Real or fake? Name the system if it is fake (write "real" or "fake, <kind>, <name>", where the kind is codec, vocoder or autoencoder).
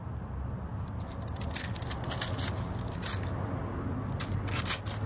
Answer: real